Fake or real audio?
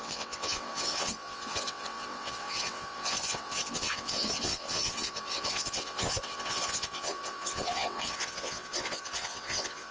fake